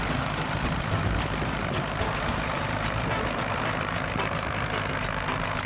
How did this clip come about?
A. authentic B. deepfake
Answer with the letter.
B